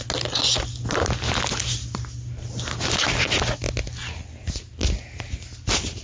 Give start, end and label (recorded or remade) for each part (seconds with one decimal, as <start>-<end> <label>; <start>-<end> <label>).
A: 0.0-6.0 recorded